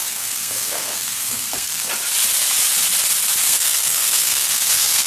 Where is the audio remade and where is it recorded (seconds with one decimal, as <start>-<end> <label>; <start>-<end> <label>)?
0.0-1.9 remade; 1.9-3.4 recorded; 3.4-5.1 remade